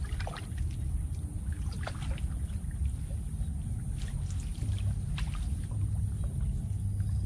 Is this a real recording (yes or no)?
yes